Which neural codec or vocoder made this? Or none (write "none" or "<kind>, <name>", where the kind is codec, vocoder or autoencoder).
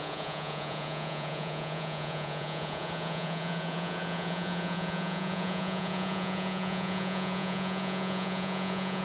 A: vocoder, Vocos